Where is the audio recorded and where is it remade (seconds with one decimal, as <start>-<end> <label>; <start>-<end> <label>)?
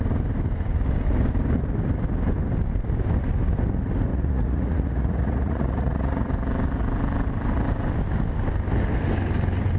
0.0-4.1 recorded; 4.1-6.3 remade; 6.3-9.8 recorded